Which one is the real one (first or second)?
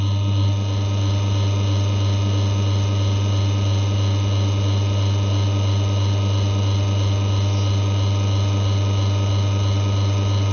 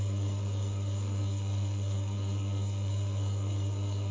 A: first